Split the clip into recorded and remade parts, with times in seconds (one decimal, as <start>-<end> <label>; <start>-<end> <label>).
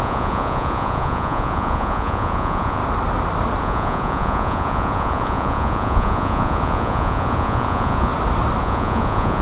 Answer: 0.0-2.8 remade; 2.8-3.6 recorded; 3.6-8.1 remade; 8.1-8.6 recorded; 8.6-9.4 remade